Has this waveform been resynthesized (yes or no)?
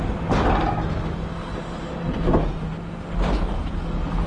no